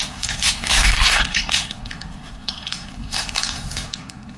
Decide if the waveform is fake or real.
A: fake